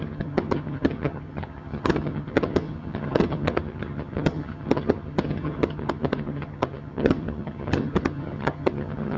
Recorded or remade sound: remade